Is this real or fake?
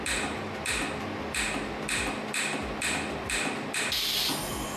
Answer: real